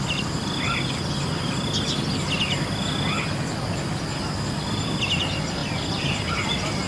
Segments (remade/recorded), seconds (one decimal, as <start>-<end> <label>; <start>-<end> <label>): 0.0-6.9 recorded